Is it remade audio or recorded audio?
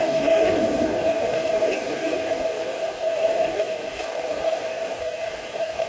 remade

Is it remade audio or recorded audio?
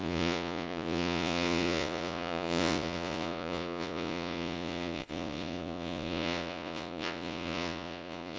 remade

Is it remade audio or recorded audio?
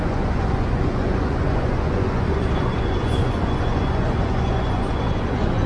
remade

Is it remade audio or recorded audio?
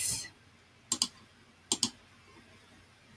recorded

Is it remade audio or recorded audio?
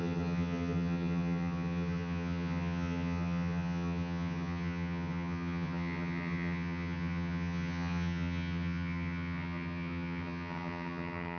remade